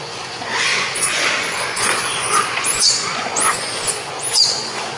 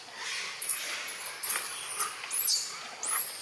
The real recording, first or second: second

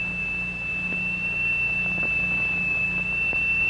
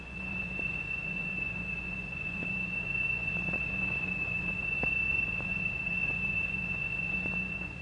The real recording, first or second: first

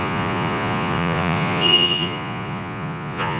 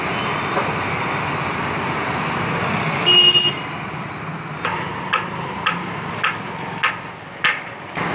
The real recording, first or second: second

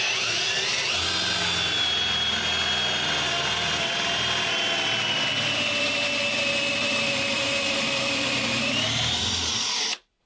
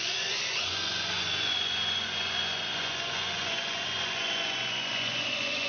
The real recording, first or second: first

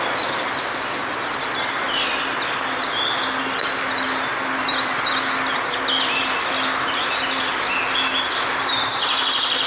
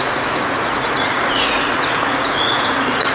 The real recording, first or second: first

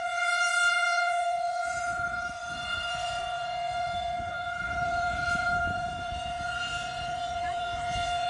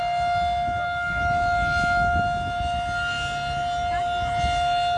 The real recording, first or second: second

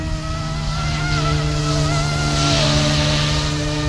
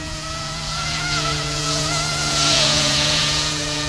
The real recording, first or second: first